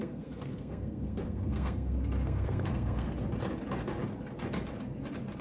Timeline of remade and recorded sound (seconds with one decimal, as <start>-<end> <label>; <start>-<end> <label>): 0.0-3.1 remade; 3.1-5.4 recorded